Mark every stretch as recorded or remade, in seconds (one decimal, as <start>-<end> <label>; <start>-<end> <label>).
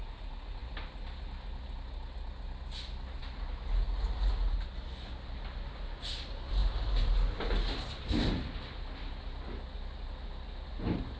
0.0-11.2 recorded